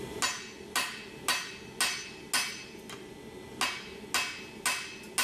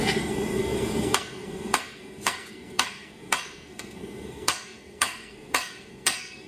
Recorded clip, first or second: first